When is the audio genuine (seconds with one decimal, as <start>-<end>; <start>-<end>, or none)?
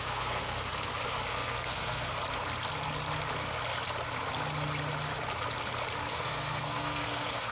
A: 0.7-1.3; 2.1-6.1